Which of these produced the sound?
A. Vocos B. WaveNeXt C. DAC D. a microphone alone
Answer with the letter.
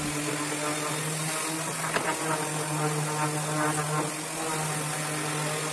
D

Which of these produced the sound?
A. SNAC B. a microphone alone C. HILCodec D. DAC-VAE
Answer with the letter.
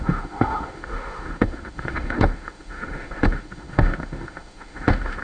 D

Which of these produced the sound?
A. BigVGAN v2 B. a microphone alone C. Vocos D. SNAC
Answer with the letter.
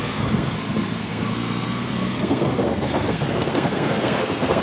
D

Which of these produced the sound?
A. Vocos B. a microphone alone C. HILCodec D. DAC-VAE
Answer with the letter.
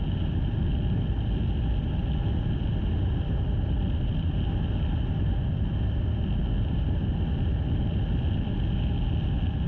B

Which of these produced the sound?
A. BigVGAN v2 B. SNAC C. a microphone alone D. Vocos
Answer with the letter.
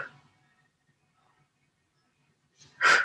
C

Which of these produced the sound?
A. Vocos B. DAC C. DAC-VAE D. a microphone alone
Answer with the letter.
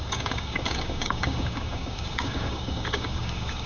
B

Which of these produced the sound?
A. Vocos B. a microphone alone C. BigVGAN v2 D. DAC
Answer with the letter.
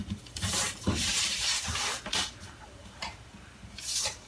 C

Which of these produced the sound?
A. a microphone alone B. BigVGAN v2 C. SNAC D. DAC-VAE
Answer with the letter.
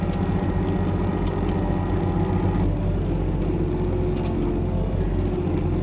A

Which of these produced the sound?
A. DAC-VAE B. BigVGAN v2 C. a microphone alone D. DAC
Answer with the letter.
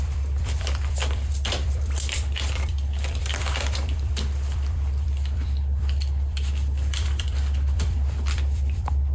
B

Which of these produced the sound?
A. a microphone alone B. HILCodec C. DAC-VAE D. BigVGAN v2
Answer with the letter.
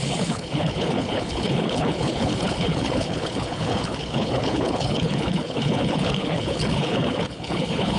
B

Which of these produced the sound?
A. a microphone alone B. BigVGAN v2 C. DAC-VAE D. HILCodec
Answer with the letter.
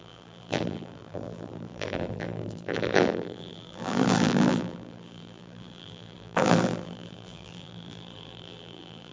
B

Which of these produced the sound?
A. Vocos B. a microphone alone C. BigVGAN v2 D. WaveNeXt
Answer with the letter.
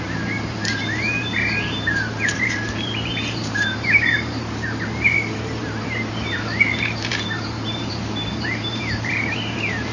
C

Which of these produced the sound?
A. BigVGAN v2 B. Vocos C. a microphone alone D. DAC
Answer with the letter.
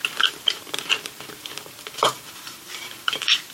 A